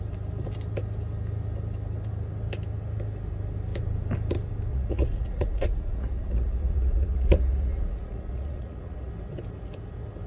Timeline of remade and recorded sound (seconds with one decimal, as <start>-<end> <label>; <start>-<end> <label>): 0.0-4.7 recorded; 4.7-9.1 remade; 9.1-10.3 recorded